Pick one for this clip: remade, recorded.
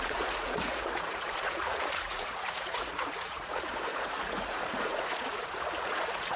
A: remade